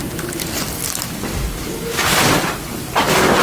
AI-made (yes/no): yes